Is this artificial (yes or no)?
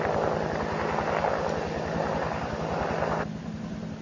no